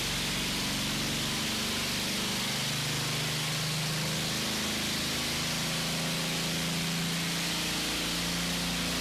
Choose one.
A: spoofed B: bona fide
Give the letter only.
B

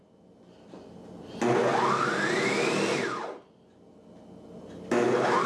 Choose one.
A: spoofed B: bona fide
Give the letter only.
B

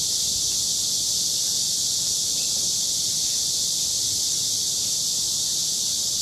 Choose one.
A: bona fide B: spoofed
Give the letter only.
A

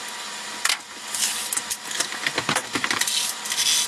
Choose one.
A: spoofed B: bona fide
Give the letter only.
B